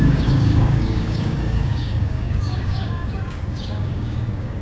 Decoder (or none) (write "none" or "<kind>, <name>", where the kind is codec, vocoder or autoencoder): codec, DAC